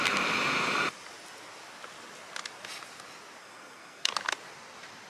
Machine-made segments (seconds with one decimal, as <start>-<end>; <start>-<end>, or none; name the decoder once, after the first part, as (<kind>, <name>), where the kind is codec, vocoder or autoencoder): 3.4-4.1 (codec, SNAC)